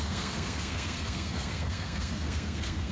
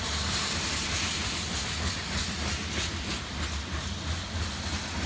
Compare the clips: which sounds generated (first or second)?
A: first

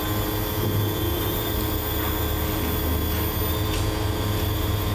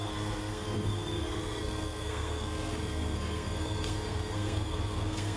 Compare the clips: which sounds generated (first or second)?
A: second